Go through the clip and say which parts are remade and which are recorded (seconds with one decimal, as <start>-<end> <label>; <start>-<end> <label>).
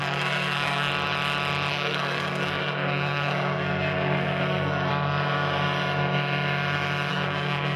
0.0-0.9 remade; 0.9-1.7 recorded; 1.7-4.9 remade; 4.9-7.1 recorded; 7.1-7.8 remade